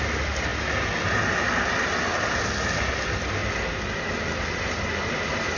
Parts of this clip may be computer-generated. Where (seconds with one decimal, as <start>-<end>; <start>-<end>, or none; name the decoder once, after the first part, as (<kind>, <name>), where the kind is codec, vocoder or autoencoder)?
none